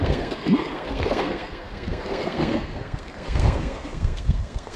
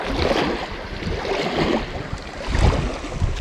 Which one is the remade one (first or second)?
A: first